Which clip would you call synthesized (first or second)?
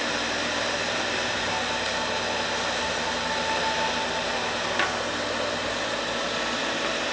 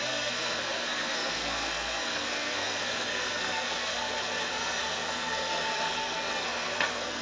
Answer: second